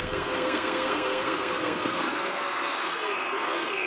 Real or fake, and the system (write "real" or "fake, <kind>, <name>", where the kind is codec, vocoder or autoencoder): fake, codec, SNAC